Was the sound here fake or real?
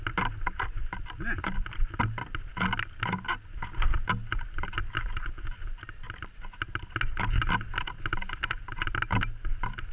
real